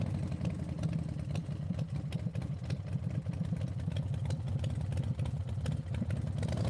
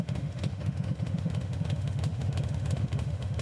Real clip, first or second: first